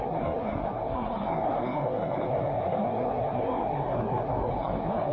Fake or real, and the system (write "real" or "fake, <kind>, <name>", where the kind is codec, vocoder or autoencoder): fake, codec, SNAC